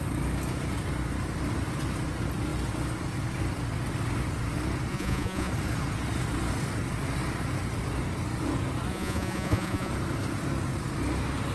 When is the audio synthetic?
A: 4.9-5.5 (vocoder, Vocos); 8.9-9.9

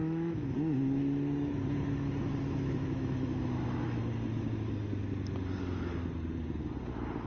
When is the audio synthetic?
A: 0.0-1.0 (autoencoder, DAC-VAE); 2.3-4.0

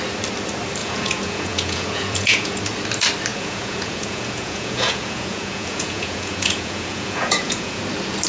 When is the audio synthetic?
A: 0.8-2.6 (vocoder, Vocos); 3.3-7.8

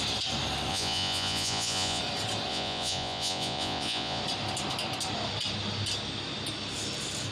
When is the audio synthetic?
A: 0.7-2.0 (vocoder, Vocos); 2.5-4.2

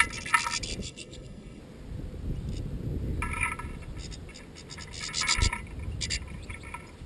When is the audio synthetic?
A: 0.8-1.6 (codec, SNAC)